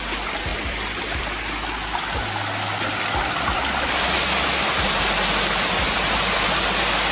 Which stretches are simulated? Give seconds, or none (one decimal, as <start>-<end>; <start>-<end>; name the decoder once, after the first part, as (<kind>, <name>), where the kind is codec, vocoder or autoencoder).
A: none